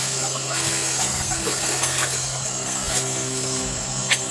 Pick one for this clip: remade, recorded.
remade